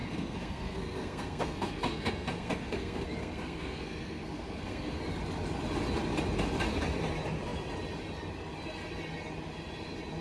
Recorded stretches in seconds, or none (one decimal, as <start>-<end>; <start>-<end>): 5.0-10.2